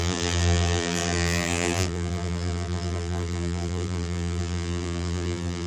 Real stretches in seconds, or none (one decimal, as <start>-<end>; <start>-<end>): none